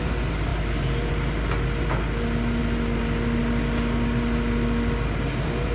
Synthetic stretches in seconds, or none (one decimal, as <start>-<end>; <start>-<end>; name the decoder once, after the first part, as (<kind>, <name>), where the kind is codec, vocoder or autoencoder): 0.5-1.1 (vocoder, BigVGAN v2)